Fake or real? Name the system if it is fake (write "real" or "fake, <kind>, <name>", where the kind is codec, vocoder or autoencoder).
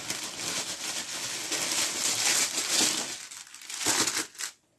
real